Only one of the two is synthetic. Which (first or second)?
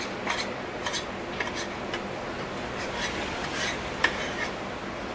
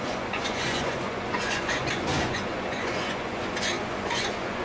second